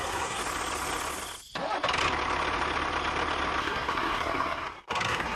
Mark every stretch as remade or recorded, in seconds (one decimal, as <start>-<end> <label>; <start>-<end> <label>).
0.0-0.4 remade; 0.4-3.6 recorded; 3.6-5.4 remade